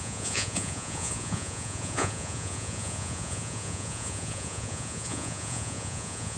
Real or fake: fake